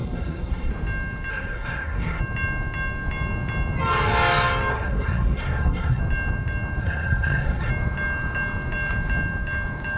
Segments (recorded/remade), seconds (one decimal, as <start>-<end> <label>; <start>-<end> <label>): 0.0-0.7 remade; 0.7-1.3 recorded; 1.3-2.2 remade; 2.2-4.7 recorded; 4.7-6.0 remade; 6.0-6.8 recorded; 6.8-7.7 remade; 7.7-10.0 recorded